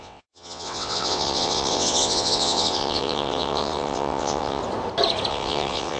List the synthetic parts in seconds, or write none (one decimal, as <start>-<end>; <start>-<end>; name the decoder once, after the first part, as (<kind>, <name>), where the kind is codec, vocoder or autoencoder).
0.0-4.6 (vocoder, WaveNeXt); 5.3-6.0